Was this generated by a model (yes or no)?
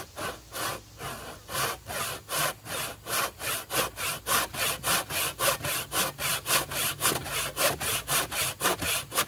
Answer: no